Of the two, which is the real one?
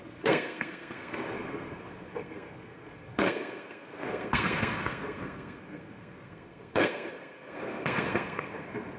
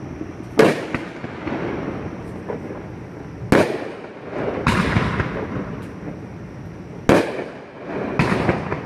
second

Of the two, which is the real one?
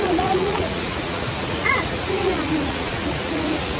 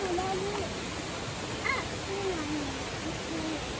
second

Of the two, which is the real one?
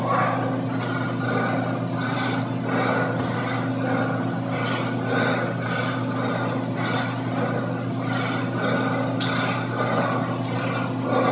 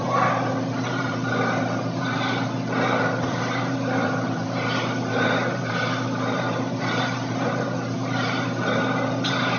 first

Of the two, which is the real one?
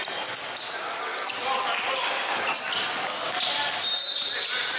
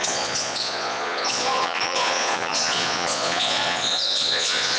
first